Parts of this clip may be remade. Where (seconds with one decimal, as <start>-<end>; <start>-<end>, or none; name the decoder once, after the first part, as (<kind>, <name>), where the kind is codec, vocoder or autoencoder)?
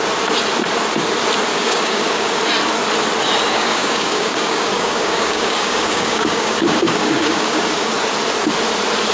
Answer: 1.5-2.4 (codec, DAC); 3.5-7.9